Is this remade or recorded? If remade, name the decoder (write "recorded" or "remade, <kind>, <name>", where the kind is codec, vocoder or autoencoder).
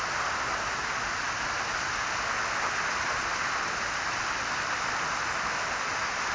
recorded